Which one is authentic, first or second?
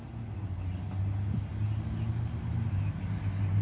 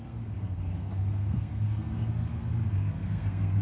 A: first